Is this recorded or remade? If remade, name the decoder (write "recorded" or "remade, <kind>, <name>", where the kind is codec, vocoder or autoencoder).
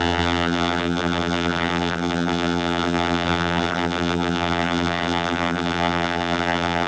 remade, vocoder, BigVGAN v2